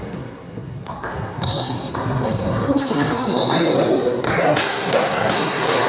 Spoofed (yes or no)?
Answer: yes